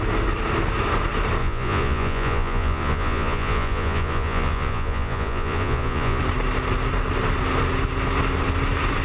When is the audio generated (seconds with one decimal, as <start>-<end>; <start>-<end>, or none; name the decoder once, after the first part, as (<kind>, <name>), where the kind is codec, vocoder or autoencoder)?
1.4-6.2 (vocoder, Vocos)

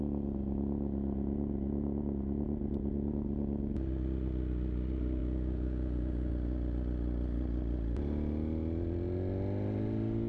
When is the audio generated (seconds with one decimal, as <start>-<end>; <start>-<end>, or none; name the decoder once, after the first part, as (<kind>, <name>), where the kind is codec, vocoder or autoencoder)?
5.2-6.3 (vocoder, Vocos)